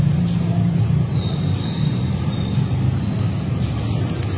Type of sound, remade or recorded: recorded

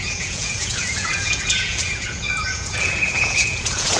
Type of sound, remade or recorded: remade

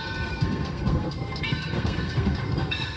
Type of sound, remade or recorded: remade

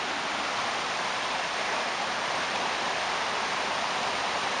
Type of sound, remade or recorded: recorded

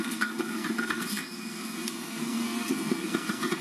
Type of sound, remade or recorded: remade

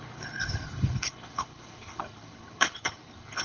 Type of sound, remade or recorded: remade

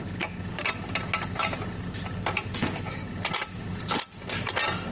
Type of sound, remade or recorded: recorded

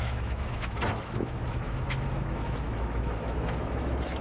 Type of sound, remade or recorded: remade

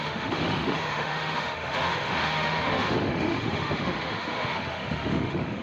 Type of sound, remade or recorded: remade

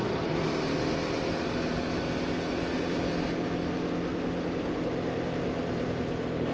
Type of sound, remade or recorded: recorded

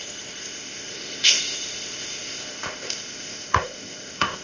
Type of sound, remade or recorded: remade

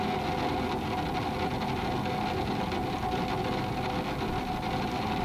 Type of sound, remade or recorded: recorded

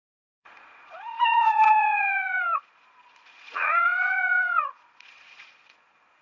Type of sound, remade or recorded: remade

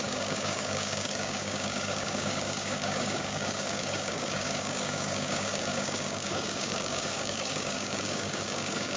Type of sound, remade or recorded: remade